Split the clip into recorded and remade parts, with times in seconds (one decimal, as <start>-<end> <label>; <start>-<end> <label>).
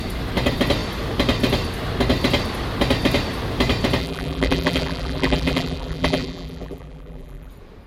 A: 0.0-4.0 recorded; 4.0-7.5 remade; 7.5-7.9 recorded